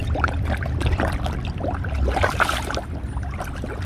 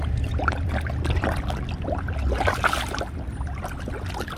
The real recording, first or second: second